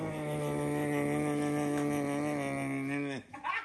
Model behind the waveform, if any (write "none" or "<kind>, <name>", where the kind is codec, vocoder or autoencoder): none